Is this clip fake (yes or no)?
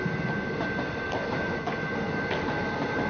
no